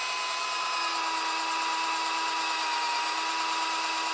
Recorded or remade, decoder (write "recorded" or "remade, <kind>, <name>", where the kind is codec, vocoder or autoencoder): recorded